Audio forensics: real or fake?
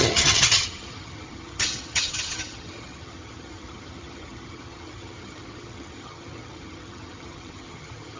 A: fake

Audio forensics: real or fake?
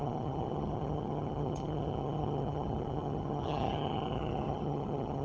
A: fake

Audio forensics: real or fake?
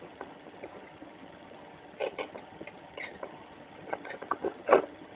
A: fake